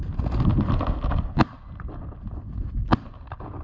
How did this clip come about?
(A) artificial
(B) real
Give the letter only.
B